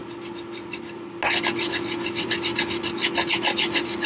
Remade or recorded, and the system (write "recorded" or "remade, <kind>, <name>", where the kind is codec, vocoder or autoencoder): recorded